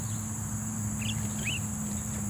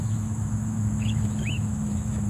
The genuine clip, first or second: first